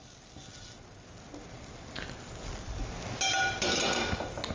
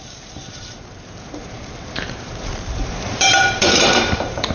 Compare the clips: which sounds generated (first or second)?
second